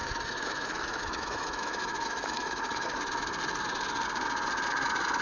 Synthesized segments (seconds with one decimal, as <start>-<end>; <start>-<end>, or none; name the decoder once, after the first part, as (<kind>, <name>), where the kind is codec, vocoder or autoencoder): 0.0-3.1 (autoencoder, DAC-VAE)